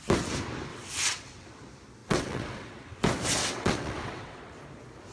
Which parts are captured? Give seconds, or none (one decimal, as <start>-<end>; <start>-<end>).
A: 0.0-0.7; 1.6-2.0; 3.0-3.4; 4.6-5.1